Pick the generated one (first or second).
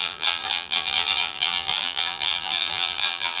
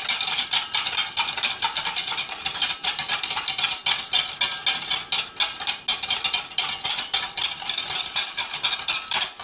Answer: first